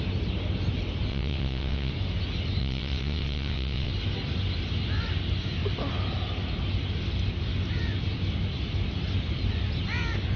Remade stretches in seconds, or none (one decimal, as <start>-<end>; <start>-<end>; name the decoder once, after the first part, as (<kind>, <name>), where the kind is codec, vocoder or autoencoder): 1.1-1.9 (vocoder, WaveNeXt); 2.6-3.9